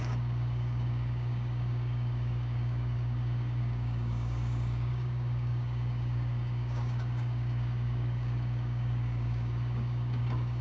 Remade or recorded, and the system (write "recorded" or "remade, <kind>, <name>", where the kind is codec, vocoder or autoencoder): remade, codec, DAC